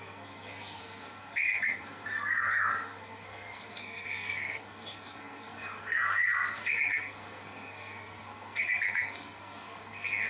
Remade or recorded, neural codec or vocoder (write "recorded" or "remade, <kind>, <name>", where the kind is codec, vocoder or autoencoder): remade, codec, SNAC